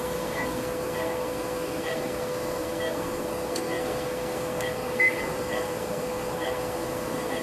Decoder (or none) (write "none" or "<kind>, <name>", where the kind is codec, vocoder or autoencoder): codec, SNAC